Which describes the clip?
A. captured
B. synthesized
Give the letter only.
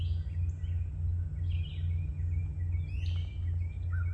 A